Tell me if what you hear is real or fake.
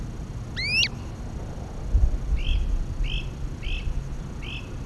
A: real